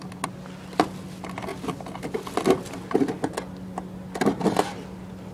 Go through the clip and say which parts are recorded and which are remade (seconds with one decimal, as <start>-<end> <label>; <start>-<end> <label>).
0.0-5.3 recorded